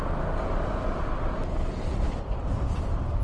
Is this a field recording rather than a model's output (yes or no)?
yes